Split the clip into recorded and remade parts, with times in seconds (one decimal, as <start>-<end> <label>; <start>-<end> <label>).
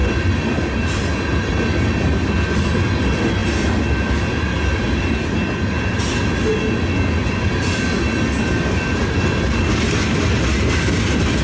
0.0-11.4 recorded